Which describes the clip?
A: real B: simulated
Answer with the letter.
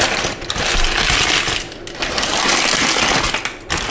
A